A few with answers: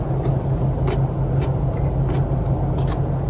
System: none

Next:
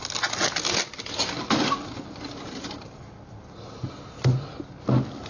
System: none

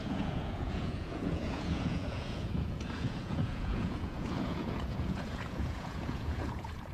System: vocoder, Vocos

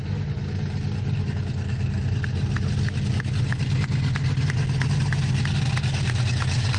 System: none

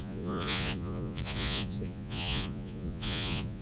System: vocoder, Vocos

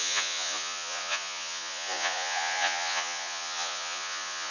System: vocoder, Vocos